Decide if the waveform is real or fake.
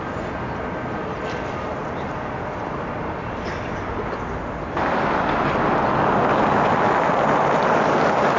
real